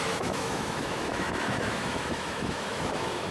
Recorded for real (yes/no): no